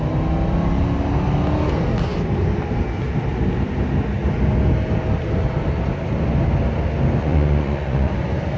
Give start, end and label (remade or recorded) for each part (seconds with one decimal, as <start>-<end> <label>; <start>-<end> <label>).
0.0-7.2 recorded; 7.2-8.1 remade; 8.1-8.6 recorded